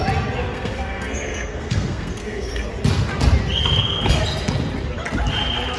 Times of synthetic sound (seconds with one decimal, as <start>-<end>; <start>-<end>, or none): 0.4-2.7; 3.6-4.2